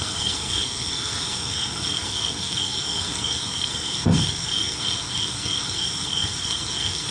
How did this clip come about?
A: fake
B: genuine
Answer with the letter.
A